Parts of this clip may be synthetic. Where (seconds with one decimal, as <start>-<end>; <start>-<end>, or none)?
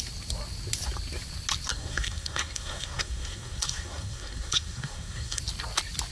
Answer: 1.7-5.4